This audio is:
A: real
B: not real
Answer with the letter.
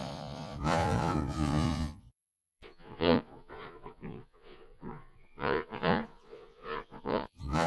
B